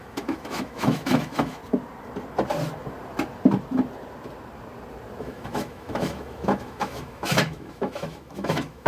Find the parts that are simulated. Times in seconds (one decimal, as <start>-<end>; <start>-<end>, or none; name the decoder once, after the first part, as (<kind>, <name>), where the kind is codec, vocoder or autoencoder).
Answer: 0.0-1.6 (autoencoder, DAC-VAE); 5.2-8.9